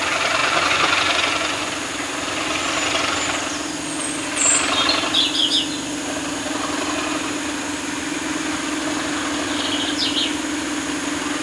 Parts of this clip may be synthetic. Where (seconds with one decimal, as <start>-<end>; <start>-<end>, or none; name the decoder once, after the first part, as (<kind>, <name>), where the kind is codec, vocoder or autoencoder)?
0.4-1.7 (vocoder, Vocos)

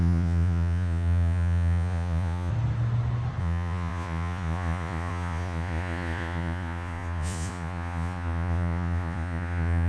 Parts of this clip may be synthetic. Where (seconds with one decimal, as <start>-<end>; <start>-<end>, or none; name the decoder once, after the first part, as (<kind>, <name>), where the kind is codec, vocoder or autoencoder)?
0.0-2.5 (vocoder, Vocos); 3.4-9.9

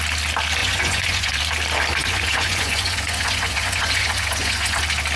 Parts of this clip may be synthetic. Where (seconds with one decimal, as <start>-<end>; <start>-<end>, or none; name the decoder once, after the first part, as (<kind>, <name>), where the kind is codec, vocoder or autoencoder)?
0.6-1.4 (vocoder, Vocos); 2.0-4.8

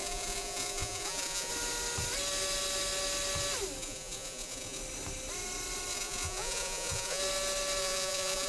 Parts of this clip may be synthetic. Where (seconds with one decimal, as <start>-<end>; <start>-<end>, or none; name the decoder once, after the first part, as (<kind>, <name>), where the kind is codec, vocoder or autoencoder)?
0.0-1.5 (vocoder, Vocos); 3.8-4.8; 5.9-7.2; 7.8-8.5

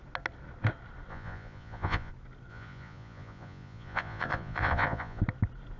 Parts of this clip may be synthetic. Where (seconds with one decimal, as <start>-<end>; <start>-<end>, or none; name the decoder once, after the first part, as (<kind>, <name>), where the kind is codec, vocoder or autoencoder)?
1.1-2.1 (vocoder, Vocos); 2.5-5.2

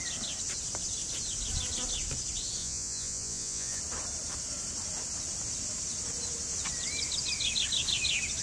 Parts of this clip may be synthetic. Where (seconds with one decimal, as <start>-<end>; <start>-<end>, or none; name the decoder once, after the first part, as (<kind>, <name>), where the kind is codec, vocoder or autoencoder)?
2.6-3.8 (vocoder, Vocos)

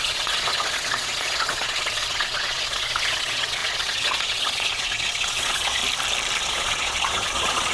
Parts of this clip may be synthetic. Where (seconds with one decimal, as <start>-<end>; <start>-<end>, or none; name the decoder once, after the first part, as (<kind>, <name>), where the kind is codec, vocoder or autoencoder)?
0.0-5.8 (vocoder, Vocos); 6.4-7.7

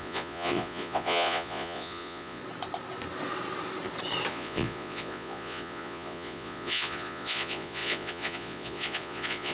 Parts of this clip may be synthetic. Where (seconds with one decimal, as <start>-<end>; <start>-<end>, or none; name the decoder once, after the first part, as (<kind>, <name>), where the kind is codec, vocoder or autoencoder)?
0.0-2.4 (vocoder, Vocos); 4.3-9.5